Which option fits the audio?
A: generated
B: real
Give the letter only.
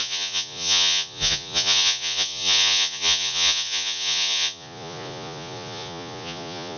A